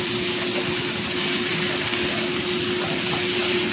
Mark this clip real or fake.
real